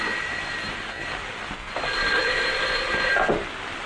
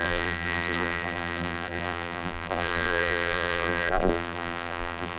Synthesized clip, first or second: second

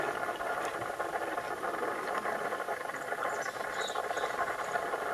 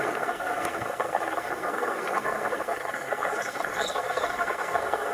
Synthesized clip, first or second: second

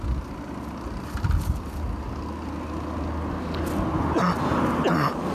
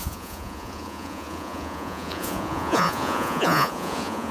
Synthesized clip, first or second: second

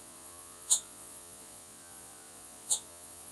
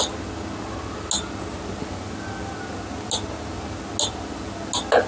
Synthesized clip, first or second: first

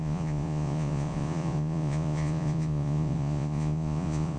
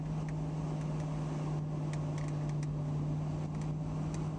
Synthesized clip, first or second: first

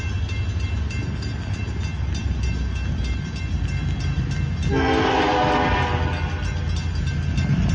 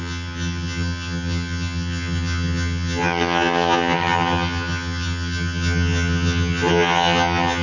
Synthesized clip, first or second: second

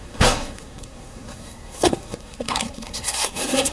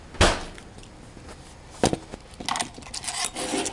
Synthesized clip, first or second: first